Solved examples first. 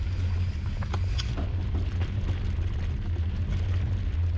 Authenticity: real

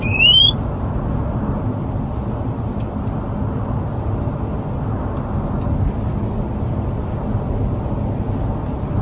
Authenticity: real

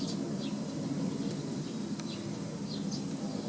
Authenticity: real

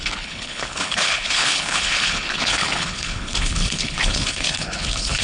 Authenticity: fake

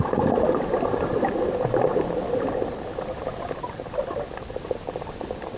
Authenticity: real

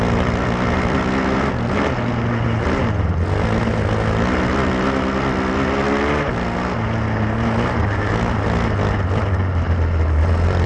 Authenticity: real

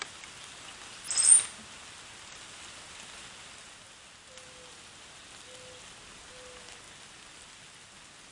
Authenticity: real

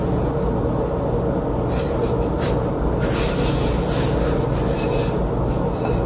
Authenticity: real